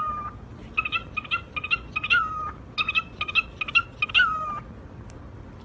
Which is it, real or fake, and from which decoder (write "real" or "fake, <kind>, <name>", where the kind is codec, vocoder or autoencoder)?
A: real